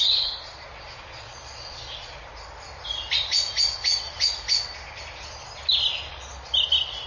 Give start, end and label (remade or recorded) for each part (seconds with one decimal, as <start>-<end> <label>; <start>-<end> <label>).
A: 0.0-2.1 remade; 2.1-6.1 recorded; 6.1-6.5 remade; 6.5-7.1 recorded